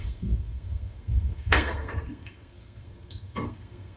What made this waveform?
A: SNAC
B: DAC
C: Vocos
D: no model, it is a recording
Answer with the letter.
A